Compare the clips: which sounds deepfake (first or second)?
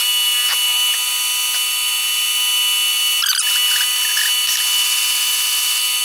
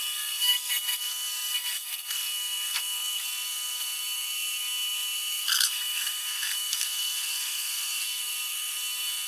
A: second